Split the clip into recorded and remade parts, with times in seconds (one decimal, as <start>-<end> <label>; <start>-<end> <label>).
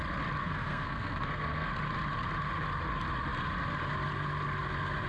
0.0-0.4 recorded; 0.4-1.7 remade; 1.7-5.1 recorded